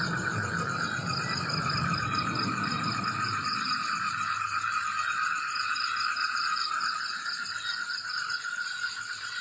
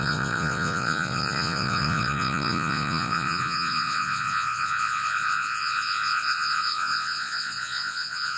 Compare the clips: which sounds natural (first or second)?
first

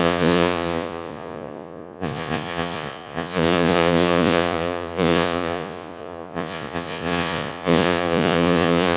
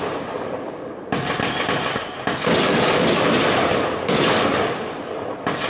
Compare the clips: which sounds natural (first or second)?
second